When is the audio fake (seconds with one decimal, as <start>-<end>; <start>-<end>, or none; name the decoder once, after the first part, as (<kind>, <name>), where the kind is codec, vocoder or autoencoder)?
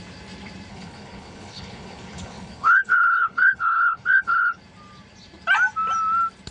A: 0.7-4.6 (codec, HILCodec)